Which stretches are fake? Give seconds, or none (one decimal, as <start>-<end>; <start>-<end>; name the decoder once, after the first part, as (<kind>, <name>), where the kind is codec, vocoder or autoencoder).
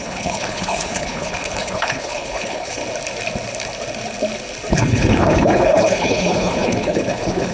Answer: 0.0-2.8 (codec, HILCodec); 4.7-7.5